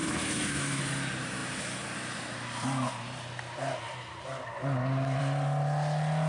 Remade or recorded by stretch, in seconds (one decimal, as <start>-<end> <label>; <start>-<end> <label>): 0.0-0.8 remade; 0.8-6.3 recorded